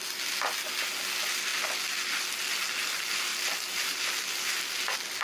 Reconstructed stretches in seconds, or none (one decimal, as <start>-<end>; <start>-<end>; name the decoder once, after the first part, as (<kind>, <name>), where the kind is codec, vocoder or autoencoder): none